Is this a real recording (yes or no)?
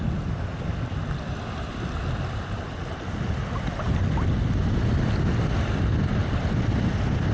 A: yes